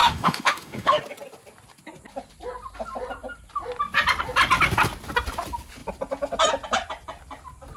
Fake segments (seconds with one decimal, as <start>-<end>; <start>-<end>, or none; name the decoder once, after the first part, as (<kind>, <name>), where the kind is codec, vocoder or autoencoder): 0.0-1.0 (autoencoder, DAC-VAE)